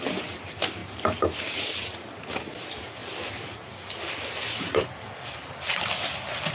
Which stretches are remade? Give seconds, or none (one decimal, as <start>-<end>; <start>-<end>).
0.0-6.5